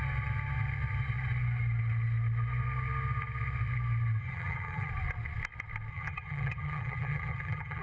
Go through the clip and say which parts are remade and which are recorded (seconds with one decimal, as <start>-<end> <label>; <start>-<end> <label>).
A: 0.0-4.2 recorded; 4.2-4.9 remade; 4.9-5.9 recorded; 5.9-7.8 remade